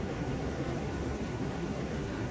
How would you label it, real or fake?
fake